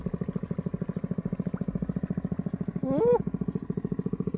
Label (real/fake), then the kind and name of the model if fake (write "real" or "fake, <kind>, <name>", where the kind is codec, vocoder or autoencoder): real